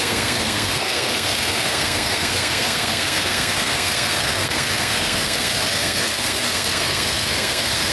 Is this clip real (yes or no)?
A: no